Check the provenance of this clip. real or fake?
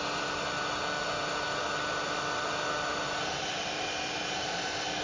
real